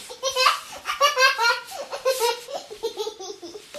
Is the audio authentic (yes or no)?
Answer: no